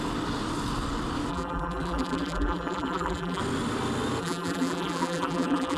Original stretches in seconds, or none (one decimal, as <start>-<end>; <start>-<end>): 0.0-1.3; 3.4-4.2